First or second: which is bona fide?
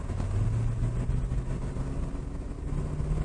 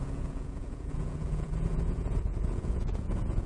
first